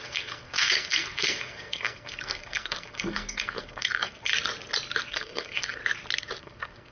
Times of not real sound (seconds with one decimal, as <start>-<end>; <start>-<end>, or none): 0.0-4.3; 5.1-5.8; 6.4-6.9

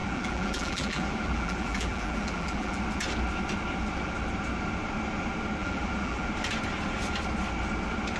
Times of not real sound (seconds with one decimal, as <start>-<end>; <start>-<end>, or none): 0.0-2.8; 5.6-6.3